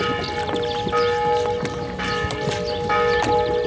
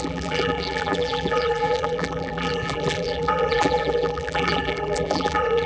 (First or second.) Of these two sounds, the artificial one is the second